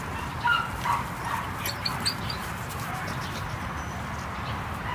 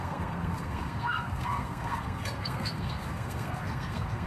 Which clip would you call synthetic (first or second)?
second